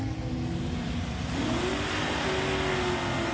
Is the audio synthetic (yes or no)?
no